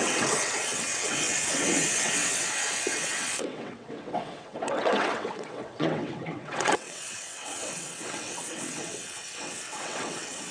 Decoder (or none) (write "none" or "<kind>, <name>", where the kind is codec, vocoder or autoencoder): vocoder, WaveNeXt